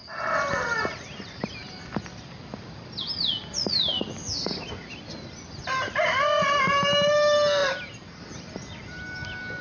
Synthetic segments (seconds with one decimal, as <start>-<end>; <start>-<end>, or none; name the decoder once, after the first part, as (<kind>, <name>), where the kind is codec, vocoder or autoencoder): none